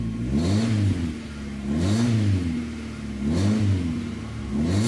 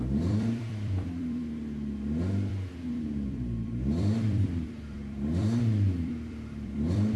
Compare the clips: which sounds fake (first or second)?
second